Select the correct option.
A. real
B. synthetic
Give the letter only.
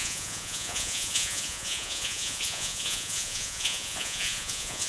B